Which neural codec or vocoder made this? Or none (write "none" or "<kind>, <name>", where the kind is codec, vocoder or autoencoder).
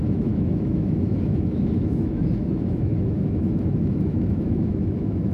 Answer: autoencoder, DAC-VAE